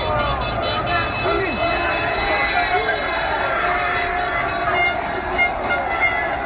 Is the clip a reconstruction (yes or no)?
no